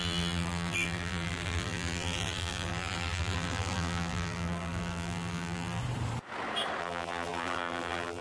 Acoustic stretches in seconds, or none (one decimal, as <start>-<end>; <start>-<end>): 5.8-6.8